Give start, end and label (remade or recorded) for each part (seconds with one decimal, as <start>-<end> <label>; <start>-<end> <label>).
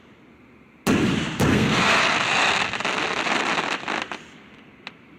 0.0-1.5 recorded; 1.5-2.0 remade; 2.0-5.2 recorded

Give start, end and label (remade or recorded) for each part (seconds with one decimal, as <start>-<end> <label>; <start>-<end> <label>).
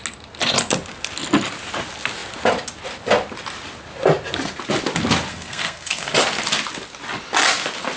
0.0-5.3 recorded; 5.3-6.1 remade; 6.1-8.0 recorded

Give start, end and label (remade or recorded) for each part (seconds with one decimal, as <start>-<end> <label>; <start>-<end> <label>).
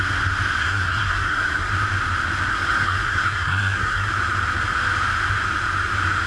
0.0-0.6 recorded; 0.6-1.7 remade; 1.7-2.5 recorded; 2.5-4.1 remade; 4.1-6.3 recorded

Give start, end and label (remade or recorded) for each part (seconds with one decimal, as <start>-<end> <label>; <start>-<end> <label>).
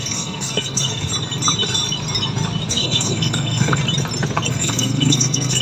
0.0-1.1 remade; 1.1-2.7 recorded; 2.7-3.8 remade; 3.8-4.5 recorded; 4.5-5.6 remade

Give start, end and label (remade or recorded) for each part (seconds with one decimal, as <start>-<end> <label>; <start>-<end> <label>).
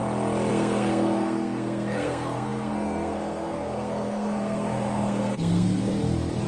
0.0-0.5 recorded; 0.5-5.9 remade; 5.9-6.5 recorded